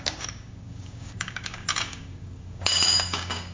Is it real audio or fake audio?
fake